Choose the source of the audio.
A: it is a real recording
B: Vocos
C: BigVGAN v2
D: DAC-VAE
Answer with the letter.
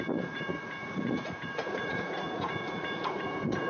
B